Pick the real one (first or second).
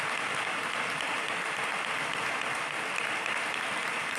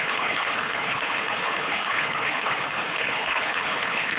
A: first